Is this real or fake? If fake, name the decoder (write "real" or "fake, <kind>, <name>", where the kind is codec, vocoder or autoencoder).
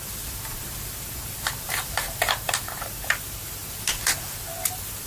fake, vocoder, BigVGAN v2